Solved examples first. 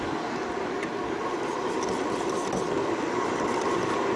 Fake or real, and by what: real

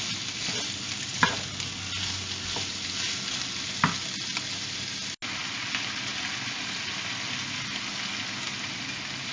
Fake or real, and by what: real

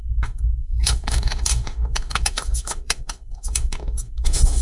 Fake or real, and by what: fake, autoencoder, DAC-VAE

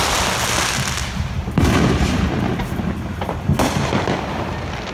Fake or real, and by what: real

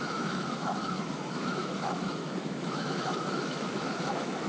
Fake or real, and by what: fake, autoencoder, DAC-VAE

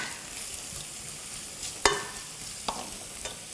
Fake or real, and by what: real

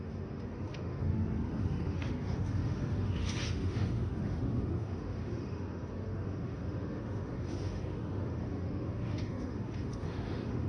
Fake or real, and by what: fake, autoencoder, DAC-VAE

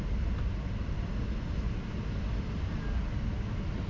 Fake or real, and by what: real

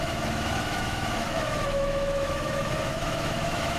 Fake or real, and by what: fake, autoencoder, DAC-VAE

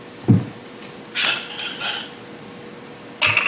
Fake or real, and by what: real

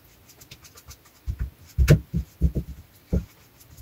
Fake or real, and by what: real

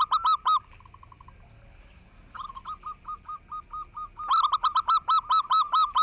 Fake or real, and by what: real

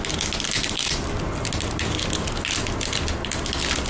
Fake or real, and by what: real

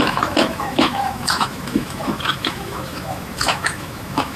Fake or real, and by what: fake, autoencoder, DAC-VAE